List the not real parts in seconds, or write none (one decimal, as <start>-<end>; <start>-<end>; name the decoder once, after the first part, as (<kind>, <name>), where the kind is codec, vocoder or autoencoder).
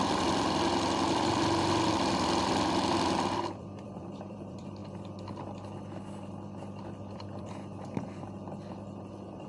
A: 0.0-4.8 (vocoder, BigVGAN v2); 6.1-9.5